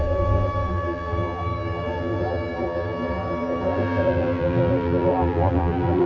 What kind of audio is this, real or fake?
fake